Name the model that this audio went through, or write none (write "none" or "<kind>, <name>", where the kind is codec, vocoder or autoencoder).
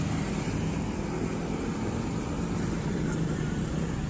none